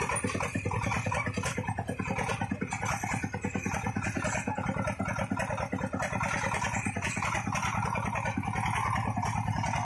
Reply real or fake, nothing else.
real